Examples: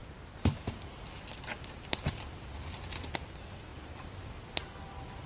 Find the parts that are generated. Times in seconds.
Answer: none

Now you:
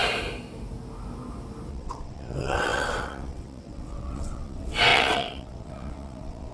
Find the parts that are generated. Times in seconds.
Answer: 1.7-6.5 (vocoder, WaveNeXt)